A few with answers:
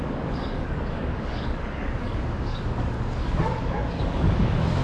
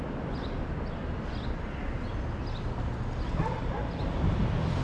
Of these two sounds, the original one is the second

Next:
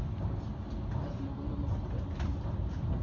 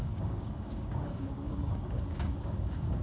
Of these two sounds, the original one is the first